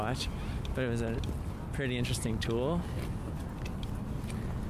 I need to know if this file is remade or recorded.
recorded